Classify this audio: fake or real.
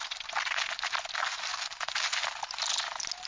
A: real